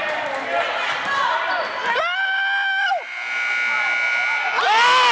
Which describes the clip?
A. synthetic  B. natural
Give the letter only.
B